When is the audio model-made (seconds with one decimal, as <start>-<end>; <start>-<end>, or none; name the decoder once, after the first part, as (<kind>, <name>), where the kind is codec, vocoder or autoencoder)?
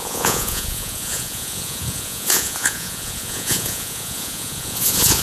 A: 0.0-5.2 (vocoder, Vocos)